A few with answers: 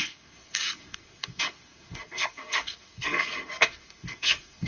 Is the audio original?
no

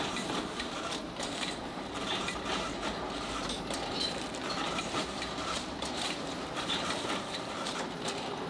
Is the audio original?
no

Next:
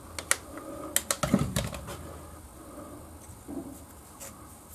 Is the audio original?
yes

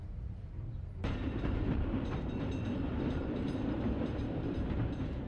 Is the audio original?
no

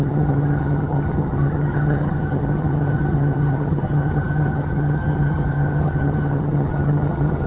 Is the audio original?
no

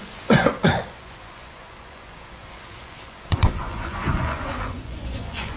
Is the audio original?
no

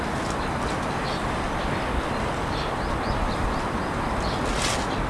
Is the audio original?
yes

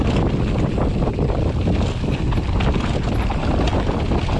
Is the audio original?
yes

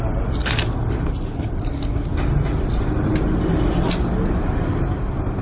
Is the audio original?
yes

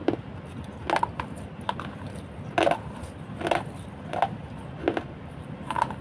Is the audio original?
yes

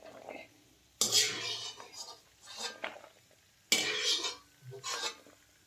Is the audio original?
yes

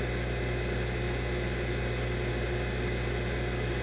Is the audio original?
yes